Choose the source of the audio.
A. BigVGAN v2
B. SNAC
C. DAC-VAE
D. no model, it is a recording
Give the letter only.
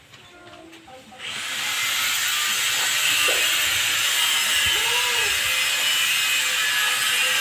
D